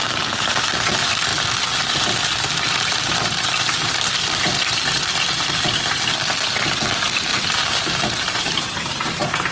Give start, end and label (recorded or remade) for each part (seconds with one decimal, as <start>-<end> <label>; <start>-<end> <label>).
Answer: 0.0-7.3 recorded; 7.3-9.5 remade